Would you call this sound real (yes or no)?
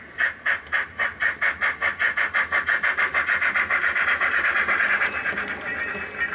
yes